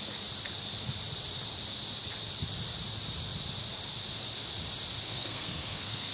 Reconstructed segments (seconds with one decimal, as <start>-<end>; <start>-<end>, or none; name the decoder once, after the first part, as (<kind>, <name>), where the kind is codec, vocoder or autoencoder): 5.1-6.1 (codec, SNAC)